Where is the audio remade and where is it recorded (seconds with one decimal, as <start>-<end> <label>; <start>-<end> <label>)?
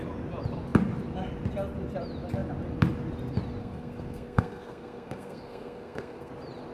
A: 0.0-3.6 recorded; 3.6-6.3 remade; 6.3-6.7 recorded